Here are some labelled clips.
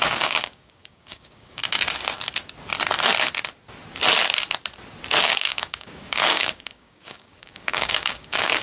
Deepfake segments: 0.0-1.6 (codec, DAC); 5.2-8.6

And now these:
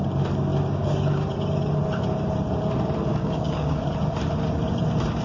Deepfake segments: 3.1-3.8 (codec, DAC)